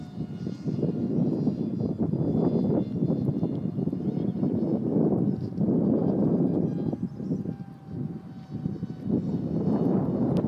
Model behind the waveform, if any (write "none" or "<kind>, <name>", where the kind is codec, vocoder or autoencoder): none